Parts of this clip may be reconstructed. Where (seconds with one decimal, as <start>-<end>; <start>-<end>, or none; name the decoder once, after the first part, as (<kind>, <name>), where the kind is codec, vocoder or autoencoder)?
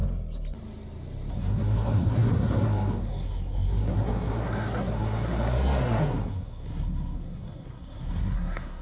1.3-8.8 (codec, SNAC)